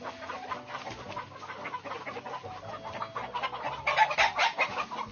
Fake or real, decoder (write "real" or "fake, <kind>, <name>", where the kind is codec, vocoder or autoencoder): real